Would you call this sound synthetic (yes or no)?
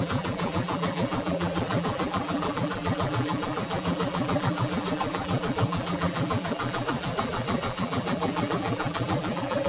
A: yes